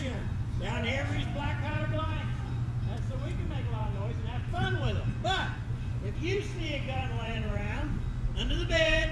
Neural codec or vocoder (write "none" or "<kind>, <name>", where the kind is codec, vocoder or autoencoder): vocoder, Vocos